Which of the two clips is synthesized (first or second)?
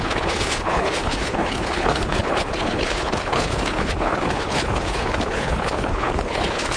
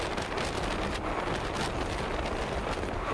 first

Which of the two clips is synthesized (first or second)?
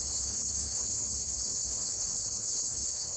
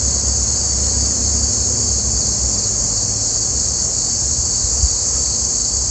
first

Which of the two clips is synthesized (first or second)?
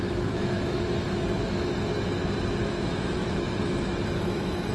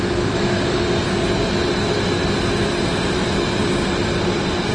first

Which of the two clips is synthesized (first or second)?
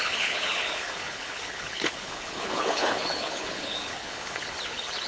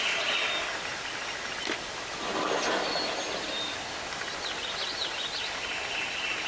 first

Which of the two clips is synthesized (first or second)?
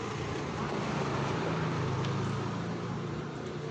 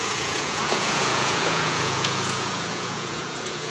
second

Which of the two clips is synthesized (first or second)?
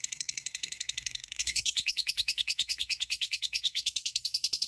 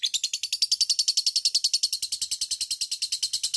first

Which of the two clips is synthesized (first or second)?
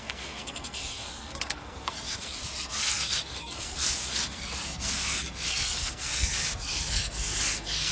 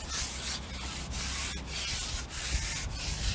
first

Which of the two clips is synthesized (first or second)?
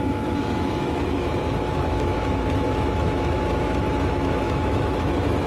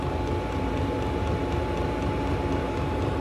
first